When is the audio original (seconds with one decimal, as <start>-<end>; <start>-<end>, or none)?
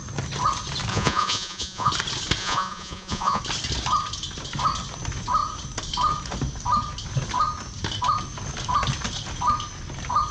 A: 0.0-0.9; 1.9-2.4; 3.4-10.3